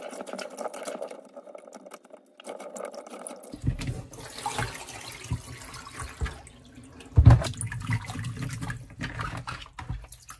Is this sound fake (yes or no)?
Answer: no